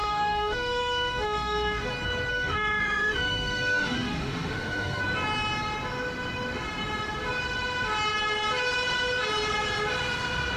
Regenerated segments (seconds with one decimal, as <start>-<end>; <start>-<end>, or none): 0.0-1.9; 2.3-5.0